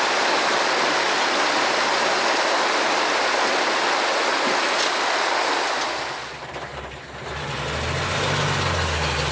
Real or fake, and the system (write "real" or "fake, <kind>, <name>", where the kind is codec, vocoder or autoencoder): real